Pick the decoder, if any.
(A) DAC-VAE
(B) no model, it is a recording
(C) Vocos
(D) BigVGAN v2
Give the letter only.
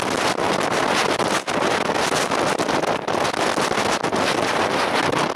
B